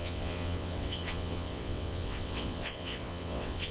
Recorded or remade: remade